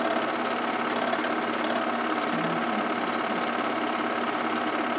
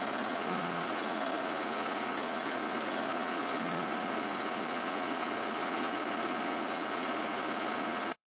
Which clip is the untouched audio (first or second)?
first